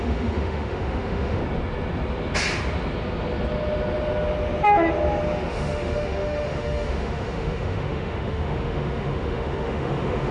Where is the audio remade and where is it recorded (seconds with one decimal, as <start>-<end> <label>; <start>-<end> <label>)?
0.0-1.4 remade; 1.4-5.5 recorded; 5.5-10.3 remade